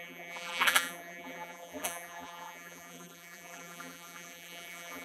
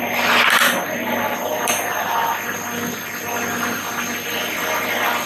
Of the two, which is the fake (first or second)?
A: first